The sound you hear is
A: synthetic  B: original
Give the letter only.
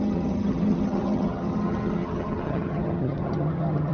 A